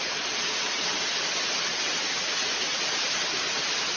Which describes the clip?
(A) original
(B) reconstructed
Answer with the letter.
A